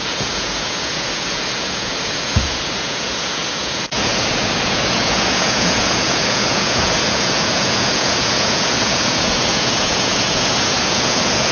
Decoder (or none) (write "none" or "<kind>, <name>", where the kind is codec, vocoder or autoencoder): vocoder, Vocos